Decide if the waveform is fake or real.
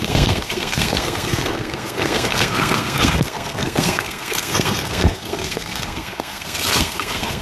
fake